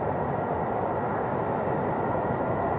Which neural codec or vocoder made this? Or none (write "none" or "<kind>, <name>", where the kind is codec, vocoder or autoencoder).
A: none